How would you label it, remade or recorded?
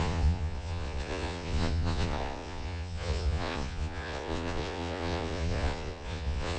remade